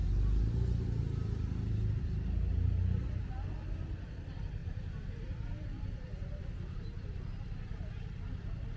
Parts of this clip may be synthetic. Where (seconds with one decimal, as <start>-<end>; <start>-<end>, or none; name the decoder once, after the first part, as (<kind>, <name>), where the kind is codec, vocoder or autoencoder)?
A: 4.6-7.9 (vocoder, BigVGAN v2)